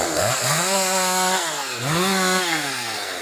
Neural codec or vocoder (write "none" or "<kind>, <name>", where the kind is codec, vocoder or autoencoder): codec, SNAC